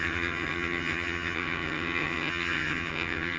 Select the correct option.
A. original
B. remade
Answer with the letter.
B